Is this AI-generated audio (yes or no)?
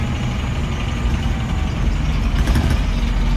no